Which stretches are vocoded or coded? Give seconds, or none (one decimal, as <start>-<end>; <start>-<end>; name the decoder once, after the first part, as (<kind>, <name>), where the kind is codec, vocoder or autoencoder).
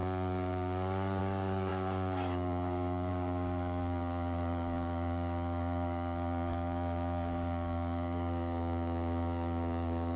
0.0-10.2 (codec, DAC)